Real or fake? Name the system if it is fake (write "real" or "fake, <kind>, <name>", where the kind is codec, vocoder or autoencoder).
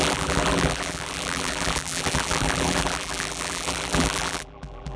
fake, vocoder, BigVGAN v2